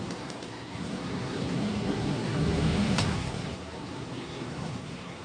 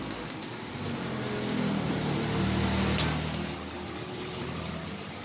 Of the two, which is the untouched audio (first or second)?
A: second